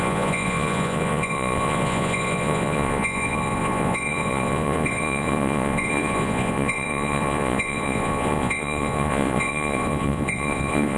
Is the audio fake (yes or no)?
yes